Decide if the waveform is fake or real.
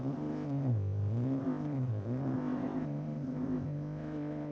fake